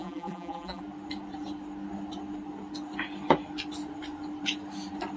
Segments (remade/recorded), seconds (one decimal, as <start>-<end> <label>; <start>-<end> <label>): 0.0-0.8 remade; 0.8-5.2 recorded